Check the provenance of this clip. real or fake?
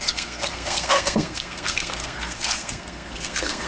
fake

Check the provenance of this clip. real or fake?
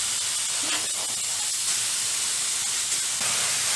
real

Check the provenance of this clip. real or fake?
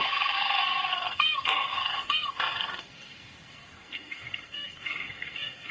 fake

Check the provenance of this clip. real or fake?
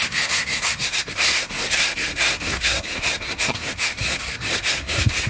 fake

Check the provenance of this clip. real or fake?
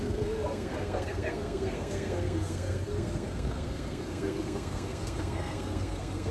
fake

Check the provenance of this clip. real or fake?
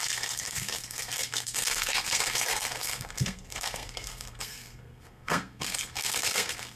fake